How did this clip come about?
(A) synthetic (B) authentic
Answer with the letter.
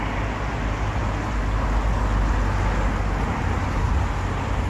B